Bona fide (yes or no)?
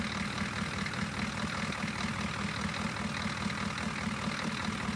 yes